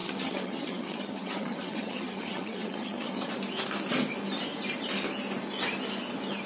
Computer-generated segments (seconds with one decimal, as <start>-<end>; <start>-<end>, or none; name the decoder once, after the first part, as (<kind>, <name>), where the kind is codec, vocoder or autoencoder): 0.0-3.3 (vocoder, HiFi-GAN)